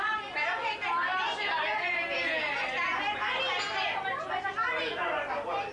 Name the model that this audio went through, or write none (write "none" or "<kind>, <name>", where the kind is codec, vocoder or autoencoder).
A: none